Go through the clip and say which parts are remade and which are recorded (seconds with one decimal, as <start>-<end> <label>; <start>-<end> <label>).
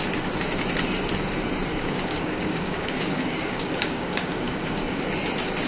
0.0-1.7 recorded; 1.7-5.1 remade; 5.1-5.7 recorded